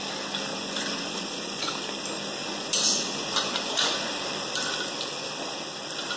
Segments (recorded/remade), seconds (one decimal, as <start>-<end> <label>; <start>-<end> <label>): 0.0-0.5 recorded; 0.5-1.7 remade; 1.7-2.4 recorded; 2.4-4.1 remade; 4.1-6.2 recorded